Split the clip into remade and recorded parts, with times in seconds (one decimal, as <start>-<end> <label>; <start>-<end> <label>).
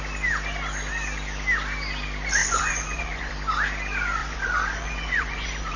0.0-2.4 recorded; 2.4-3.3 remade; 3.3-4.2 recorded; 4.2-5.8 remade